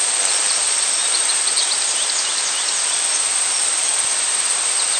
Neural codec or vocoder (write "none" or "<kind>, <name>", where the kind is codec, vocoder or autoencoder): none